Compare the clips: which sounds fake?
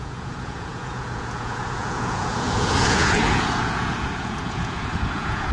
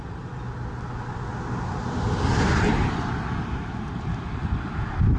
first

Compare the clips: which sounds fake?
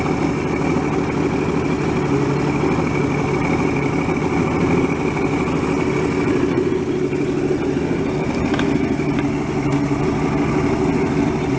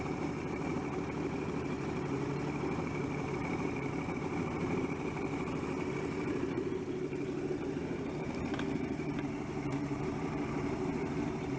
second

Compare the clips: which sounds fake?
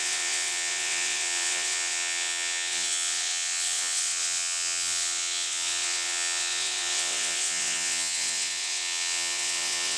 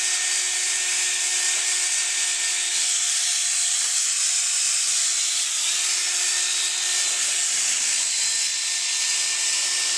first